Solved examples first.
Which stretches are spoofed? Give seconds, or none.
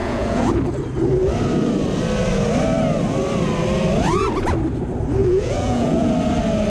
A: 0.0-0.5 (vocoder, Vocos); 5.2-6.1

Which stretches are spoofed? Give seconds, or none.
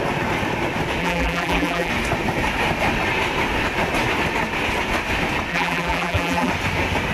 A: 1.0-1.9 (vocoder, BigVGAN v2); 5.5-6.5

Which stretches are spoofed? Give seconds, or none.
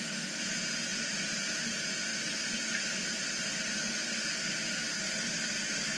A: 0.0-2.1 (vocoder, Vocos)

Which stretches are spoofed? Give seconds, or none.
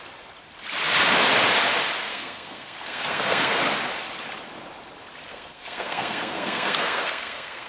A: 2.1-3.6 (codec, SNAC); 5.3-7.7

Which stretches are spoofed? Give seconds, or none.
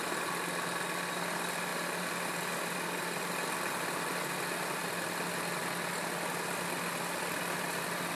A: none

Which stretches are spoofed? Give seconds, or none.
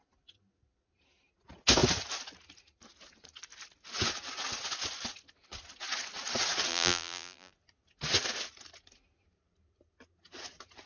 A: 6.7-7.5 (vocoder, BigVGAN v2)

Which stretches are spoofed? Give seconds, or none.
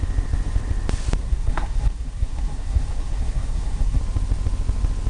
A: 1.2-4.0 (codec, SNAC)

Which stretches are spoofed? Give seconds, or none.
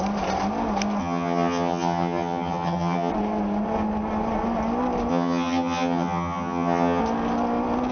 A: 1.0-3.1 (vocoder, HiFi-GAN); 5.1-7.0